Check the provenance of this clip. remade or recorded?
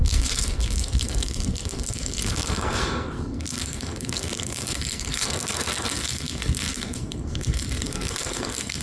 remade